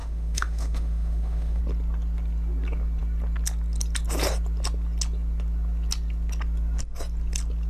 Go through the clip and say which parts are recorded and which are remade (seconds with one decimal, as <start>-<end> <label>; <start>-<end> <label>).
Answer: 0.0-1.6 remade; 1.6-7.7 recorded